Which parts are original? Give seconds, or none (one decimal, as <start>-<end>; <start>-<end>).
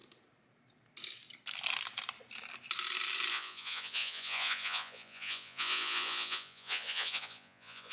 0.0-3.3